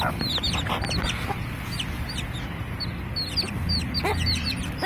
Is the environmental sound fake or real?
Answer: real